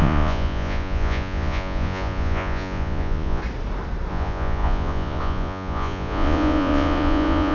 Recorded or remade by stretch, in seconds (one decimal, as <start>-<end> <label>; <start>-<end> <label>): 0.0-3.4 remade; 3.4-4.1 recorded; 4.1-7.5 remade